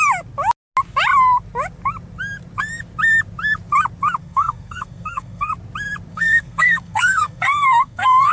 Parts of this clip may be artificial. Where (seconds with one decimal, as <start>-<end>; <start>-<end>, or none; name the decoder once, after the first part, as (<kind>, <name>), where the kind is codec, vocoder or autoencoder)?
4.2-5.5 (codec, SNAC); 6.1-8.3

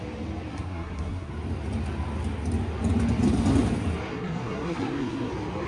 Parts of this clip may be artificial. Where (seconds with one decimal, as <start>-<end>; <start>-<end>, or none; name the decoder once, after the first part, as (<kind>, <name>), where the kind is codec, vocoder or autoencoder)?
0.5-1.3 (codec, SNAC); 4.1-5.3

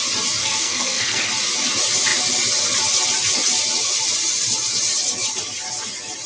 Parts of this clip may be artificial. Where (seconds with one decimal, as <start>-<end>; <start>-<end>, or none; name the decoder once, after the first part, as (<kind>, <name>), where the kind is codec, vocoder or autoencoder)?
0.4-1.3 (codec, SNAC)

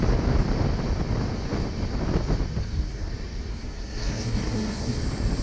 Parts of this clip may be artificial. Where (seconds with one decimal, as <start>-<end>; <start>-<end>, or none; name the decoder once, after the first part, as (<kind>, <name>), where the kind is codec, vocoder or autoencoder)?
2.6-3.1 (codec, SNAC); 3.5-5.0

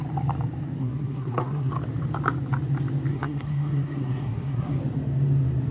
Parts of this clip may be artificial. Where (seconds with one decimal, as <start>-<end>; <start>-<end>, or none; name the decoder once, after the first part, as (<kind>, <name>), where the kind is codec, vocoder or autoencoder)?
0.8-1.7 (codec, SNAC); 3.1-4.8

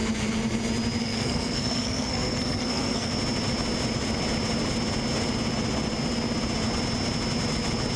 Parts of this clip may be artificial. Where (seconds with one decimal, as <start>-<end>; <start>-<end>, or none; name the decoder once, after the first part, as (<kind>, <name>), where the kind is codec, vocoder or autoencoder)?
1.0-3.1 (codec, SNAC)